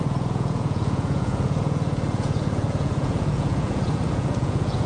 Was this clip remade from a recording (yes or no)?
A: yes